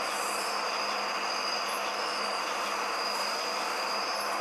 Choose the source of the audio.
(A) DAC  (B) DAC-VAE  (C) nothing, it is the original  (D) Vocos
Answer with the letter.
C